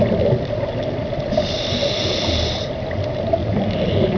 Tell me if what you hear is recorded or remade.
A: recorded